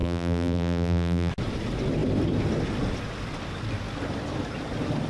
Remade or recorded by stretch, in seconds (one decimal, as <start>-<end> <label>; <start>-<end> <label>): 0.0-1.3 remade; 1.3-5.1 recorded